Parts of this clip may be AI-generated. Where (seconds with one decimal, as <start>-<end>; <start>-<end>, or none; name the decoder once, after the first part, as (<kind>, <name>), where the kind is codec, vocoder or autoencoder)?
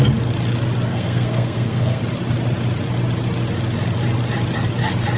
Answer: 0.9-2.0 (codec, SNAC)